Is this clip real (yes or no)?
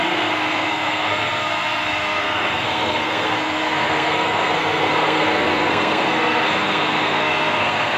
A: no